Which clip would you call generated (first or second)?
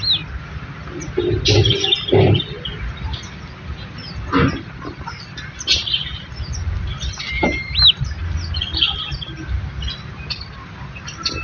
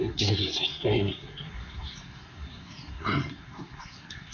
second